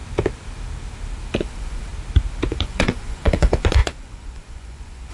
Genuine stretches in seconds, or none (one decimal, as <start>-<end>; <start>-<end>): 0.0-1.4; 1.9-2.5